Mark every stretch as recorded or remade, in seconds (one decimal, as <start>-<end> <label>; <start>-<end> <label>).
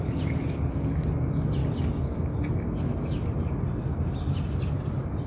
0.0-5.3 recorded